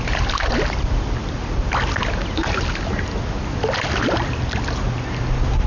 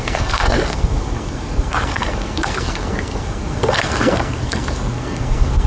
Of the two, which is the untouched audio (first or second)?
first